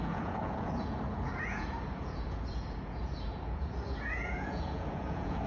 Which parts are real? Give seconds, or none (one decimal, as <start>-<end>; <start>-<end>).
none